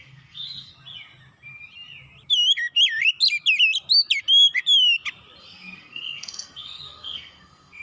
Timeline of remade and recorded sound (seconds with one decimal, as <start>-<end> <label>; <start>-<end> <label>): 0.0-0.7 remade; 0.7-5.4 recorded; 5.4-7.8 remade